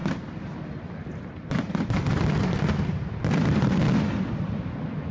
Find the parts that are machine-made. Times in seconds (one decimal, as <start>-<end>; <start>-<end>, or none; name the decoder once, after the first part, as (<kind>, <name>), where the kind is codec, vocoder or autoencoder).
none